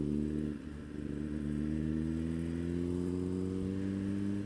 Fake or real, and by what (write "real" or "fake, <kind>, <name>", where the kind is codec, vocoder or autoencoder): real